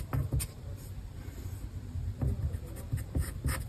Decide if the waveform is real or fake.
real